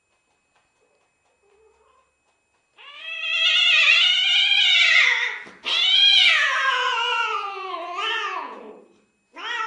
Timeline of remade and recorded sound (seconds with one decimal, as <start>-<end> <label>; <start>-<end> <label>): 0.0-6.1 recorded; 6.1-8.7 remade; 8.7-9.7 recorded